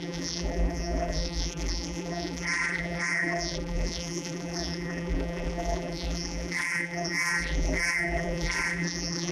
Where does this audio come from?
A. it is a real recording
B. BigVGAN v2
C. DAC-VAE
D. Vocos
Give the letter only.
B